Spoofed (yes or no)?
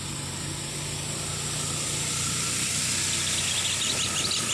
no